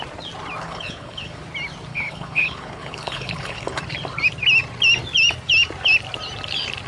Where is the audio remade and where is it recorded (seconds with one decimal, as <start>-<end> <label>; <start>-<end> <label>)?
0.0-0.6 recorded; 0.6-1.4 remade; 1.4-1.9 recorded; 1.9-3.8 remade; 3.8-6.9 recorded